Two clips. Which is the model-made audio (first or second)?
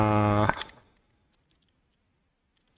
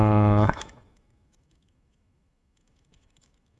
second